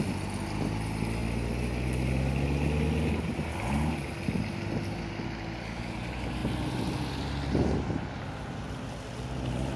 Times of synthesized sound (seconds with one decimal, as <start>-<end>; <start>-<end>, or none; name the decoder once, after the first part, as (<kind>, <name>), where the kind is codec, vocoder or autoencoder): none